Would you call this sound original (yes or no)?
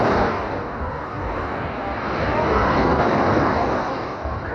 no